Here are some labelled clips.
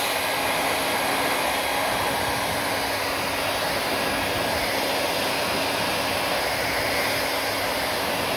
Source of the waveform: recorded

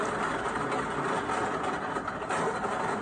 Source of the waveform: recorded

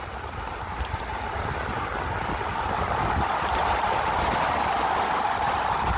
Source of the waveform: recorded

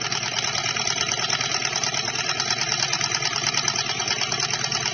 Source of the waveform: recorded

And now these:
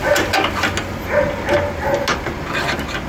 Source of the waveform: recorded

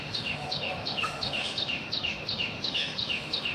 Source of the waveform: remade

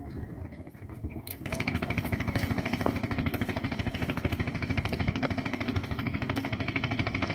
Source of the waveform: remade